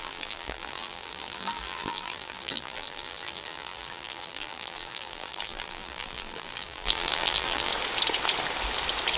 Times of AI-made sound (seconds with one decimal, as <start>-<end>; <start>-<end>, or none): 0.0-7.7